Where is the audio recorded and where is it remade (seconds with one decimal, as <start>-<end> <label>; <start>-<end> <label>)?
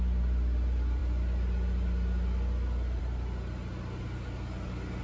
0.0-5.0 recorded